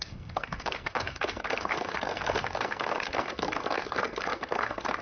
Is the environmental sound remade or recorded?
remade